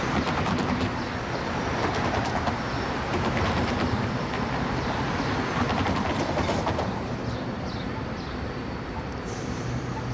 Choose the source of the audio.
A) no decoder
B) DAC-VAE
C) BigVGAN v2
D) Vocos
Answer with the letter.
C